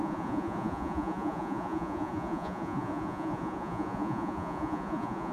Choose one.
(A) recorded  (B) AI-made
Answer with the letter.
B